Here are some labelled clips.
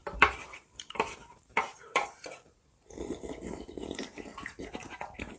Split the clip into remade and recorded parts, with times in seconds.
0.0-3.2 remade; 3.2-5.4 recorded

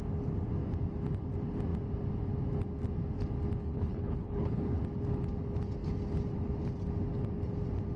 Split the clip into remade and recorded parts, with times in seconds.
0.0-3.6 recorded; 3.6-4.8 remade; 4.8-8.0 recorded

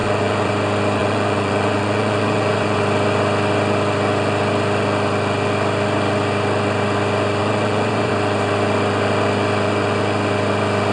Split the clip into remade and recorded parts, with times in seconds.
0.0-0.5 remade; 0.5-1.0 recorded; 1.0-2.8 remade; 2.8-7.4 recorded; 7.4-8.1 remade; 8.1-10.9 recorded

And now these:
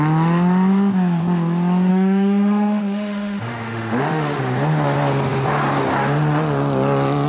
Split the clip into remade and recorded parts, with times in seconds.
0.0-1.9 recorded; 1.9-4.4 remade; 4.4-7.3 recorded